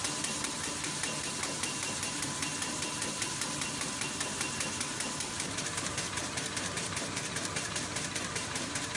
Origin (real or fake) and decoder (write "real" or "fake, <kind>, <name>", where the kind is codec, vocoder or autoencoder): fake, vocoder, BigVGAN v2